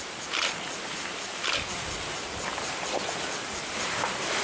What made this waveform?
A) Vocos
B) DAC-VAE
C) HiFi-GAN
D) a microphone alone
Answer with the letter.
D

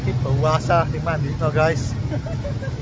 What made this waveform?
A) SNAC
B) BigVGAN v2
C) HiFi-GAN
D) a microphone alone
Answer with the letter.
D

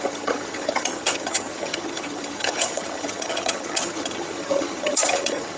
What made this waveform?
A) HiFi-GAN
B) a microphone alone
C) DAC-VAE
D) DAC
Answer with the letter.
A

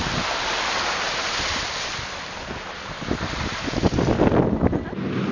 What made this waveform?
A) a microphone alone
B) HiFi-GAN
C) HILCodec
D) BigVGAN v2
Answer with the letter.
A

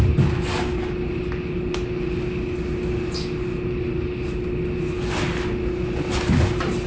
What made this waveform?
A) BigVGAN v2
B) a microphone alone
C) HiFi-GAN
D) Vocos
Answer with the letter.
B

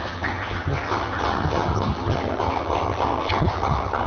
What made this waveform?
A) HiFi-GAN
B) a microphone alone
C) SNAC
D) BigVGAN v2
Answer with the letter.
A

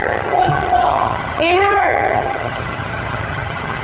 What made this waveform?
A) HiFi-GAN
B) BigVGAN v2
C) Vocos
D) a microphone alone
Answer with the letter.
A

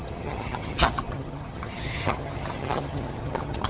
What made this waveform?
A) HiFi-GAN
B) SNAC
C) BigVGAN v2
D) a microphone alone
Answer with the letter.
A